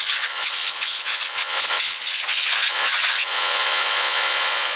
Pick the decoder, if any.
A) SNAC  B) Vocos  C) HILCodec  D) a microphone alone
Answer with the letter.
B